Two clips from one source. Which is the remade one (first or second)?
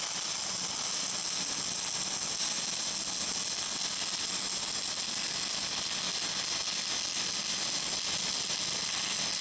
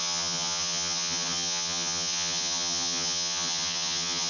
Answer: second